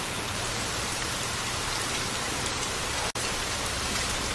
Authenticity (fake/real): fake